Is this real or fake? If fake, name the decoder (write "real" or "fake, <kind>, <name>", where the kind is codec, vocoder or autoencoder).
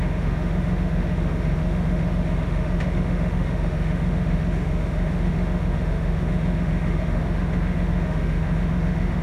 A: fake, autoencoder, DAC-VAE